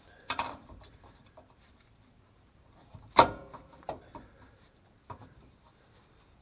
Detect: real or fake fake